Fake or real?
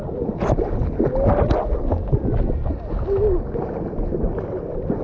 real